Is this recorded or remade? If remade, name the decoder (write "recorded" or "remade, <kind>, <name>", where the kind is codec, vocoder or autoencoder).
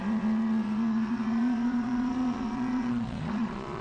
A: remade, vocoder, Vocos